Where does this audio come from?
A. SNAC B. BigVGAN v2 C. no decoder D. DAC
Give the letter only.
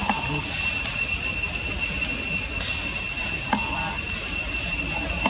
C